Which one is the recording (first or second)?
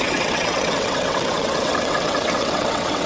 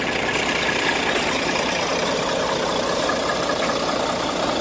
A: second